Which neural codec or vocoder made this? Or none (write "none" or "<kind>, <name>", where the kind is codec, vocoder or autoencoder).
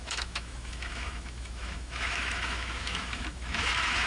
autoencoder, DAC-VAE